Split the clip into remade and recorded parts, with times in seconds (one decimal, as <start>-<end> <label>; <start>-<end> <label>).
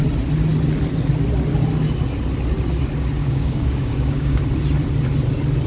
0.0-3.2 recorded; 3.2-4.4 remade; 4.4-5.7 recorded